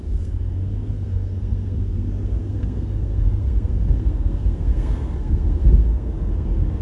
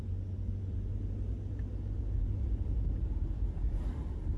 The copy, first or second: first